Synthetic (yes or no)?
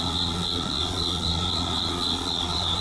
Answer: yes